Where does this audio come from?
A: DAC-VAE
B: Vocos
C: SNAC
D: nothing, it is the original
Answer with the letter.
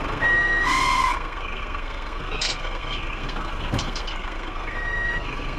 C